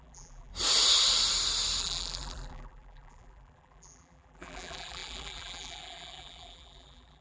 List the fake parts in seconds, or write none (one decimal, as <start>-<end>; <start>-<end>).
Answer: 0.0-0.5; 1.8-7.2